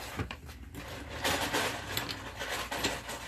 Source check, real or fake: real